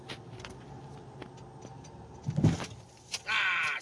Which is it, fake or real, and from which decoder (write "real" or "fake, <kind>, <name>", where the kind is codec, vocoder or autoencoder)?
real